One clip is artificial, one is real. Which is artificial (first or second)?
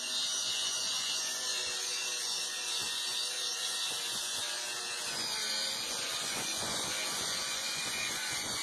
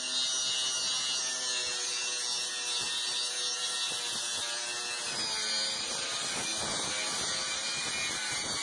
first